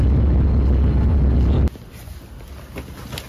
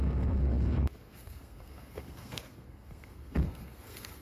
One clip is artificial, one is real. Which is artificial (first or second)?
second